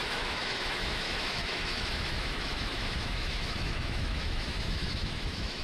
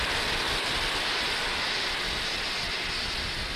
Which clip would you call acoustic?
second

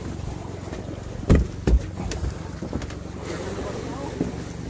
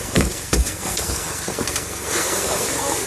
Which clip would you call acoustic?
first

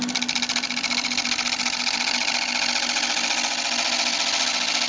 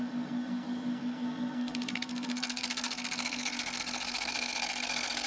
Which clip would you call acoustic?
first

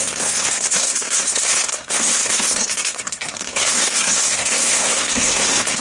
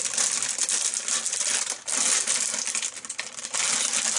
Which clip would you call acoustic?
second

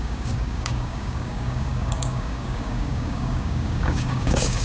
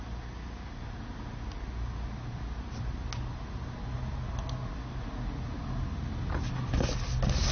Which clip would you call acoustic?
second